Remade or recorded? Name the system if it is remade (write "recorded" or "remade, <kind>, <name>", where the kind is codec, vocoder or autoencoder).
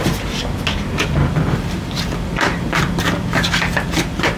recorded